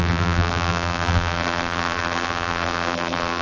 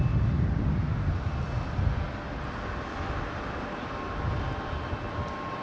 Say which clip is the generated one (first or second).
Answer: first